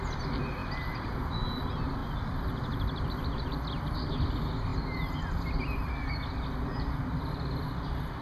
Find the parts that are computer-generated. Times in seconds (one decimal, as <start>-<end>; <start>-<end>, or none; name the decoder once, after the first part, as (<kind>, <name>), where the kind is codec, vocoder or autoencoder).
0.6-1.1 (vocoder, BigVGAN v2); 2.0-4.2

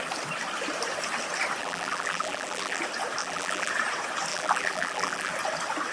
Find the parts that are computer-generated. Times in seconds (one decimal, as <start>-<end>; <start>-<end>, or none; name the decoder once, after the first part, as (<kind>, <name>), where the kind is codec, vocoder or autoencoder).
1.6-2.8 (vocoder, BigVGAN v2); 3.2-3.7; 4.3-5.3

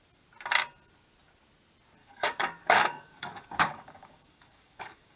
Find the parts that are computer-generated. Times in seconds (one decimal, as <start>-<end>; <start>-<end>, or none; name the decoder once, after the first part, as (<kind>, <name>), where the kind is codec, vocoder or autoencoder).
2.0-5.2 (codec, DAC)

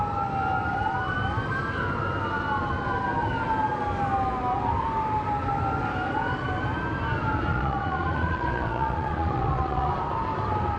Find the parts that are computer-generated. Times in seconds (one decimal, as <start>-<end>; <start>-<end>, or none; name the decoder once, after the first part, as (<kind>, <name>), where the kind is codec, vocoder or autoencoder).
7.5-9.9 (vocoder, Vocos)

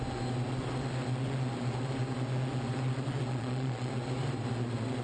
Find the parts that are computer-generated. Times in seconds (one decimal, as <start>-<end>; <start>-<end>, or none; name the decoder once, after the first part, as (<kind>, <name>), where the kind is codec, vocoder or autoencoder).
3.3-3.9 (vocoder, Vocos)